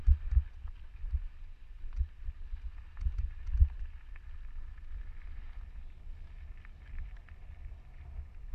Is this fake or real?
real